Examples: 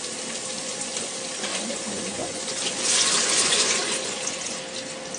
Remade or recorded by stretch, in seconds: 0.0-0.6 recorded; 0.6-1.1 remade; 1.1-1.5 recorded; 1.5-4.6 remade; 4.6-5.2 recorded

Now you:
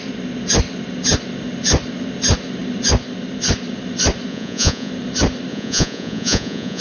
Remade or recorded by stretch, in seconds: 0.0-4.3 recorded; 4.3-4.9 remade; 4.9-5.5 recorded; 5.5-6.8 remade

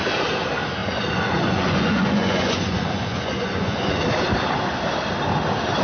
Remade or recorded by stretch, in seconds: 0.0-0.8 recorded; 0.8-4.0 remade; 4.0-5.8 recorded

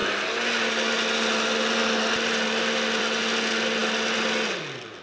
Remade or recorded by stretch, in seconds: 0.0-5.0 recorded

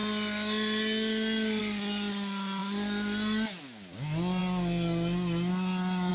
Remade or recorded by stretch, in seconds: 0.0-6.1 recorded

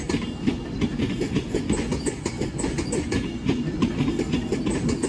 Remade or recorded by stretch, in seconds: 0.0-0.9 recorded; 0.9-4.0 remade; 4.0-5.1 recorded

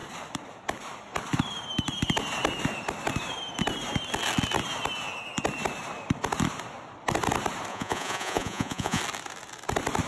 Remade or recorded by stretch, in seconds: 0.0-7.7 recorded; 7.7-9.0 remade; 9.0-10.1 recorded